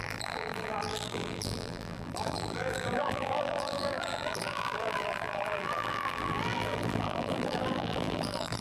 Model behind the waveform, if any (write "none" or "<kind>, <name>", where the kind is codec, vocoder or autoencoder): vocoder, BigVGAN v2